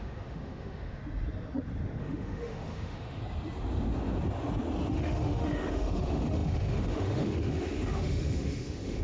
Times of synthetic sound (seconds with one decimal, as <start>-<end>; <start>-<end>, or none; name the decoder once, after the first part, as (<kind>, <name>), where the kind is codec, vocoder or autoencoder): 0.0-1.0 (autoencoder, DAC-VAE); 2.0-3.2; 4.9-9.0